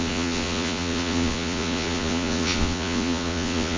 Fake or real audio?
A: fake